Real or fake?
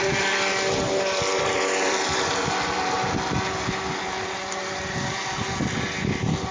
real